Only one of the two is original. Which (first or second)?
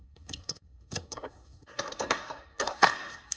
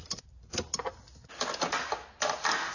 second